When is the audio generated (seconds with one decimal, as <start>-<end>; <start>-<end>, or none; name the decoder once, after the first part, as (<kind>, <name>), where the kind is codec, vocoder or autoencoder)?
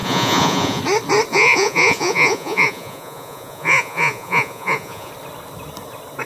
0.0-0.8 (vocoder, Vocos); 1.3-5.1